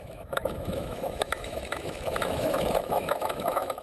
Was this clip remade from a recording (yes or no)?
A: yes